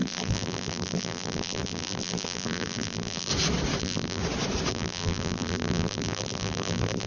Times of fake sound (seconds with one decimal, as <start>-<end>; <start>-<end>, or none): 0.0-3.3; 3.8-4.2; 4.7-7.1